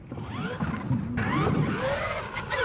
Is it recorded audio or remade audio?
recorded